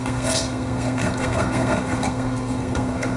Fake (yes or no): yes